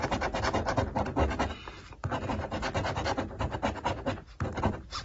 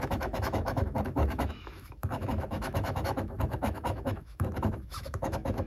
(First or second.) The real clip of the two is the first